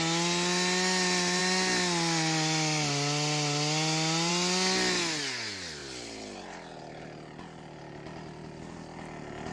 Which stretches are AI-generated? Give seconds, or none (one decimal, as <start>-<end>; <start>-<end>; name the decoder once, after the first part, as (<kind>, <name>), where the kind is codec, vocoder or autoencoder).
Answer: none